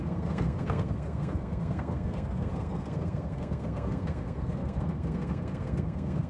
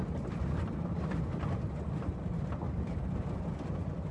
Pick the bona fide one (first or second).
second